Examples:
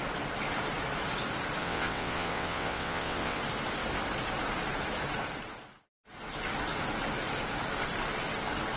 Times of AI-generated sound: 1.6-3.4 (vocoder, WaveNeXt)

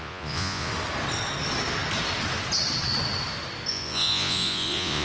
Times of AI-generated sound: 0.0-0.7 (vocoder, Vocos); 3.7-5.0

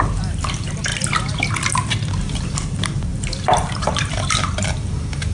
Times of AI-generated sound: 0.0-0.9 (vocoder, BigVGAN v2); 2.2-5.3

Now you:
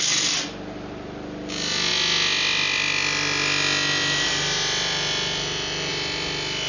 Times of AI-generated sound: none